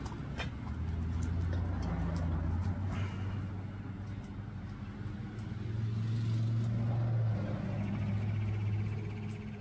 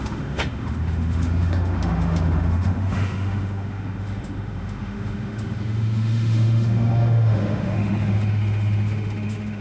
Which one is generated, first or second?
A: second